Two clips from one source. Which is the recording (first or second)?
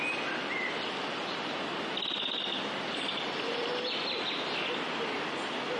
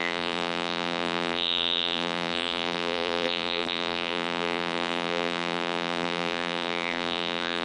first